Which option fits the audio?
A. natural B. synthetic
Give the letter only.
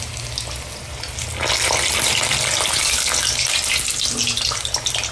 A